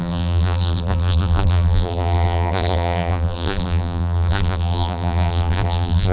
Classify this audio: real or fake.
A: fake